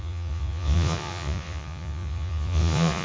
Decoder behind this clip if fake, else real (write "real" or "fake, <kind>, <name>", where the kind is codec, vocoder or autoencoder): fake, vocoder, Vocos